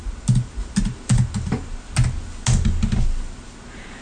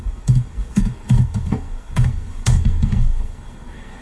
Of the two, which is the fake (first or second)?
second